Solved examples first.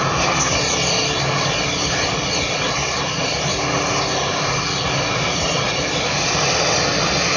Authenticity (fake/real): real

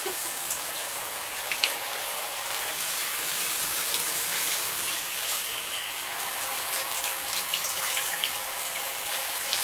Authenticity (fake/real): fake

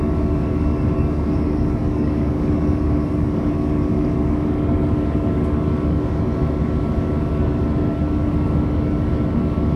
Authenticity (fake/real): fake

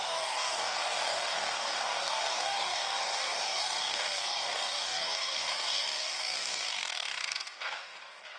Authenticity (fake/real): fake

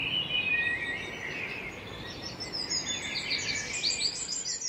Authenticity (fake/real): real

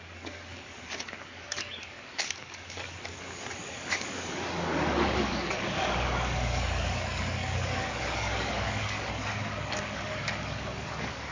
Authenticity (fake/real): fake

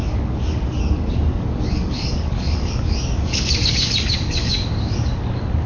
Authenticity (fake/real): fake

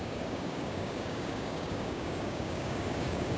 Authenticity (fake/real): fake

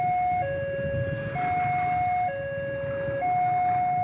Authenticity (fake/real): real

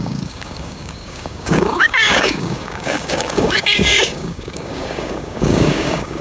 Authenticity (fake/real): fake